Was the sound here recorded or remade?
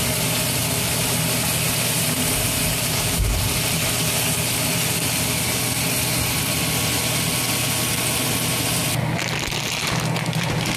recorded